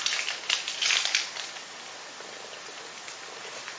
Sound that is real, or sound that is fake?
real